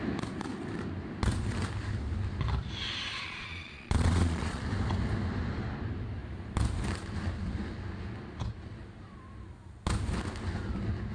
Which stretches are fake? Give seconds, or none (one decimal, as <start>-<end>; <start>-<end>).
3.1-4.6